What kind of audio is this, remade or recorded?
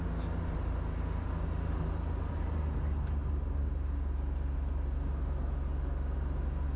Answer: recorded